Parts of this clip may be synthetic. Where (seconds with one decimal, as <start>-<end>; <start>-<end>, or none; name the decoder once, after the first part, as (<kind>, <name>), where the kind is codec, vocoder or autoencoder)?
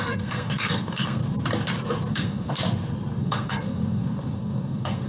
0.0-1.2 (codec, SNAC); 2.1-2.5; 3.2-5.1